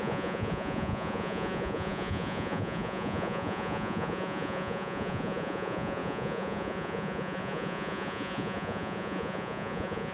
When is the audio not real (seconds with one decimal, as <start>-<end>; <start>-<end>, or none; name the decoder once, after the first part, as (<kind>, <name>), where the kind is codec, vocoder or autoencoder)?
0.0-10.1 (vocoder, Vocos)